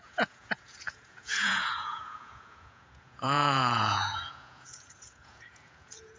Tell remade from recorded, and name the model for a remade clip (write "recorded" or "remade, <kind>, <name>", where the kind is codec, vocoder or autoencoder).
remade, vocoder, Vocos